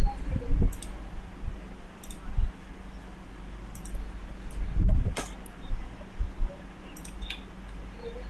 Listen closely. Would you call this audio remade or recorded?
recorded